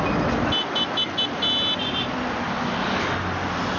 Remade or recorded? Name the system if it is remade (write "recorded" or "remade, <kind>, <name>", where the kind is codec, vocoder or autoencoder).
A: recorded